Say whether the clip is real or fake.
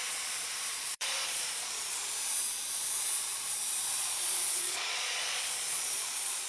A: fake